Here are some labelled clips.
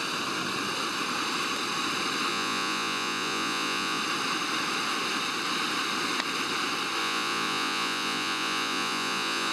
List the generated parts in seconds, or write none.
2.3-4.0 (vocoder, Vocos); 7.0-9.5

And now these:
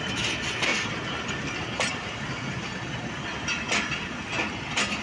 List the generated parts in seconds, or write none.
none